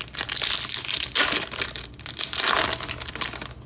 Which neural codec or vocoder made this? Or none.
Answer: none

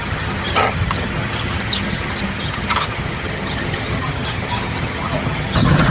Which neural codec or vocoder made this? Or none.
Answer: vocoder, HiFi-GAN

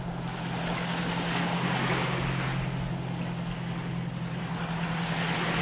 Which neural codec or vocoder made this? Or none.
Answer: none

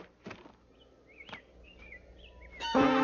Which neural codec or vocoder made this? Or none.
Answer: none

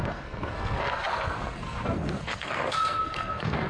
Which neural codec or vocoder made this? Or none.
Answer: codec, SNAC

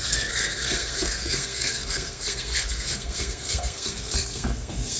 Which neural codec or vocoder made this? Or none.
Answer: codec, SNAC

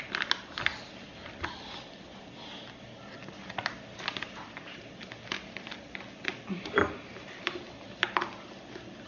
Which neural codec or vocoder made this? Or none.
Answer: none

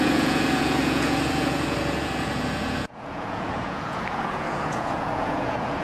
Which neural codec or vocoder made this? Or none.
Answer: vocoder, Vocos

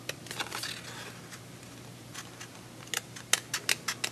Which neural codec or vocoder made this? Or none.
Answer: none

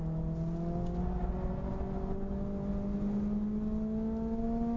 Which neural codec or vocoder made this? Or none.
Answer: none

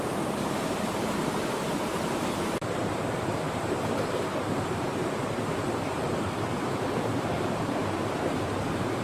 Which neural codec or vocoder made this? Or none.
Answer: vocoder, BigVGAN v2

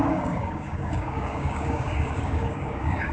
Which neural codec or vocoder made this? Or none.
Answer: codec, DAC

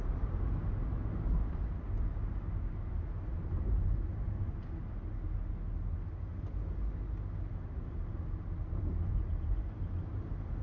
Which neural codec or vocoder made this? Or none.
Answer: none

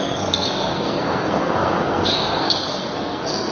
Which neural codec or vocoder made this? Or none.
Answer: codec, SNAC